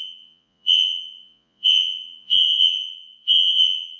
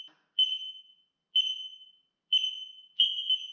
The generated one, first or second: first